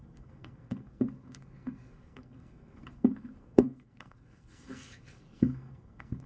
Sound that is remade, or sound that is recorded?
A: remade